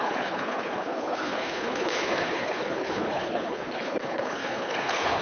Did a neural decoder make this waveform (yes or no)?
yes